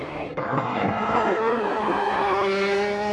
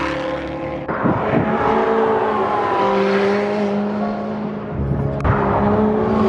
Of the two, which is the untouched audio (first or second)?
second